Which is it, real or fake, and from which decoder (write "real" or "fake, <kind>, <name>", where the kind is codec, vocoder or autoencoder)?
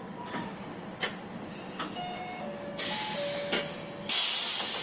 real